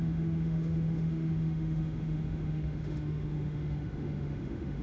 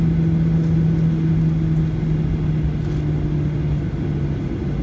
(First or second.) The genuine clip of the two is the second